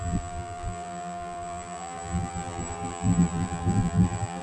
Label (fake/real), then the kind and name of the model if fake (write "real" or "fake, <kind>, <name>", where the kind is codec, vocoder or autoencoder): fake, vocoder, BigVGAN v2